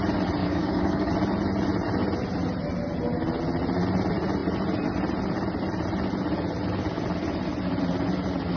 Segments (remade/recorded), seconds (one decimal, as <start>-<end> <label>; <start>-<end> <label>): 0.0-0.4 recorded; 0.4-1.1 remade; 1.1-8.6 recorded